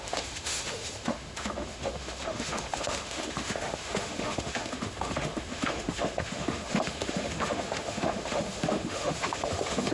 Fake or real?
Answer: fake